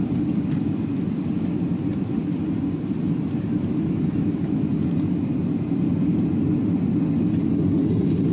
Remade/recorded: recorded